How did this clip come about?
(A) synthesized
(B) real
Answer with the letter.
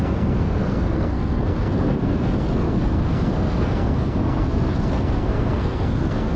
A